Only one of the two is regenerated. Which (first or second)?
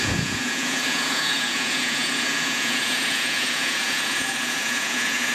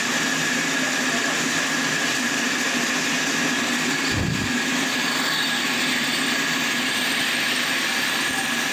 first